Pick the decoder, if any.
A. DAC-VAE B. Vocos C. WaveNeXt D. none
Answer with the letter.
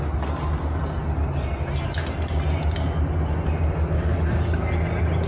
D